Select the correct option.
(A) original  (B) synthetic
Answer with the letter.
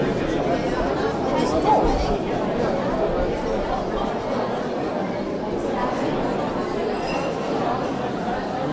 A